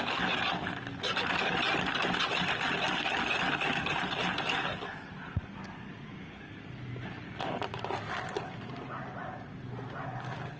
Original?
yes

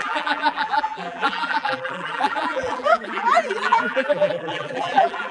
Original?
no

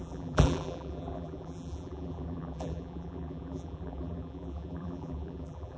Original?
no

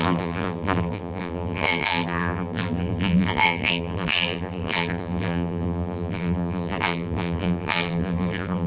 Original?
no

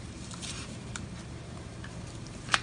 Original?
no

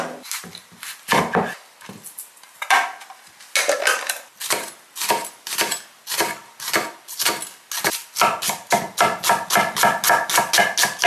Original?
yes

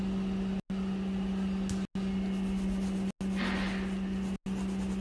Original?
yes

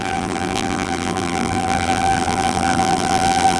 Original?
no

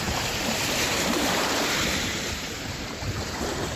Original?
no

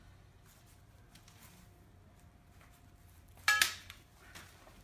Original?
yes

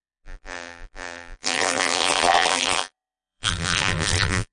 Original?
no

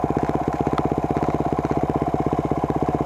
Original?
yes